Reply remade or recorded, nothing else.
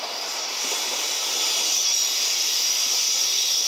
recorded